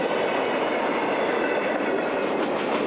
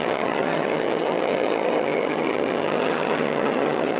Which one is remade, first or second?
second